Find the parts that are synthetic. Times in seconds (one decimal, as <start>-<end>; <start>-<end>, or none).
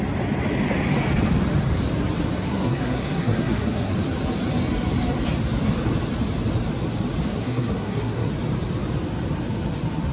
2.5-3.9; 7.3-8.3